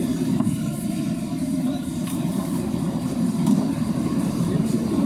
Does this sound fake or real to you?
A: fake